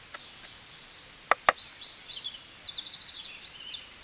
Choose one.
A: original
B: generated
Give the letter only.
A